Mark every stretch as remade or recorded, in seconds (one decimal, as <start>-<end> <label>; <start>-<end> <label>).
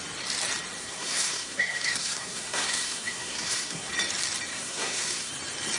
0.0-0.8 recorded; 0.8-3.9 remade; 3.9-4.5 recorded; 4.5-5.3 remade; 5.3-5.8 recorded